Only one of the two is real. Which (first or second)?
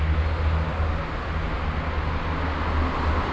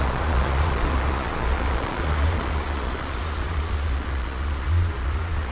first